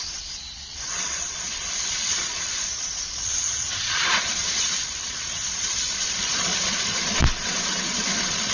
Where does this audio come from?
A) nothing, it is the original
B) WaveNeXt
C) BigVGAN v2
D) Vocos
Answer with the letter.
D